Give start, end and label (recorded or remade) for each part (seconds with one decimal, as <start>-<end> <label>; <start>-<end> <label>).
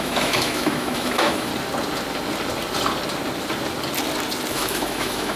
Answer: 0.0-1.5 remade; 1.5-4.5 recorded; 4.5-5.4 remade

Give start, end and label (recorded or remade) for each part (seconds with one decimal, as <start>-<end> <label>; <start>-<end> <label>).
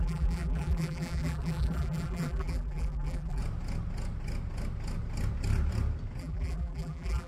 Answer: 0.0-3.4 remade; 3.4-6.2 recorded; 6.2-7.3 remade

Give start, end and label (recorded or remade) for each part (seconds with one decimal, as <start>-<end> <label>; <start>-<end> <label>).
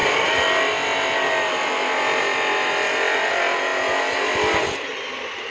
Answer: 0.0-3.3 recorded; 3.3-5.5 remade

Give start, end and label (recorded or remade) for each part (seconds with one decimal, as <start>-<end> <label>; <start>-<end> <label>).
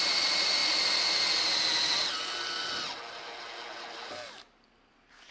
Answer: 0.0-5.3 recorded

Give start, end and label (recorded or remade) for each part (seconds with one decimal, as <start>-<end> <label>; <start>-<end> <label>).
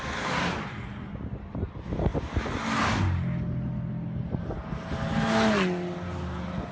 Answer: 0.0-6.7 recorded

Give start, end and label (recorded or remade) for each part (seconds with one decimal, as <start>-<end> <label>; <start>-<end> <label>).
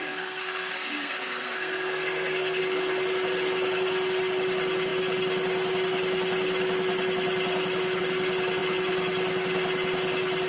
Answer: 0.0-2.6 remade; 2.6-10.5 recorded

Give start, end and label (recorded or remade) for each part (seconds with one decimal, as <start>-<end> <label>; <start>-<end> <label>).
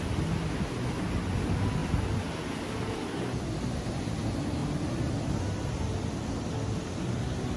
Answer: 0.0-7.6 recorded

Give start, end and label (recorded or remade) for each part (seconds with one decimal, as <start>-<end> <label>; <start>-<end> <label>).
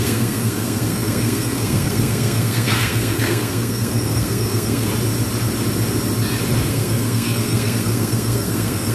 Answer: 0.0-4.9 remade; 4.9-6.7 recorded; 6.7-8.9 remade